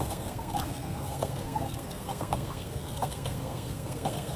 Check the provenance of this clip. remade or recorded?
remade